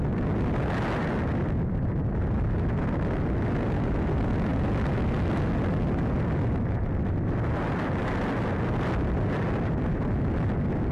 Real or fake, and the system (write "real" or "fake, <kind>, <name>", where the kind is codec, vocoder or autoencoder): real